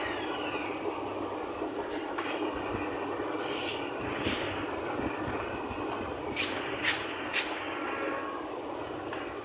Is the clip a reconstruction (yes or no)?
no